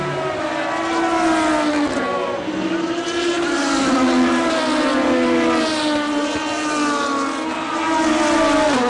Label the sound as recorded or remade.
recorded